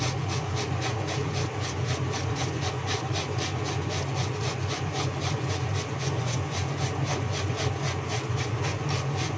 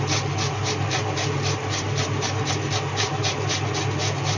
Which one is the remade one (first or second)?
first